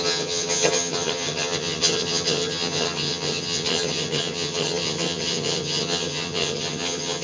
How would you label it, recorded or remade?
remade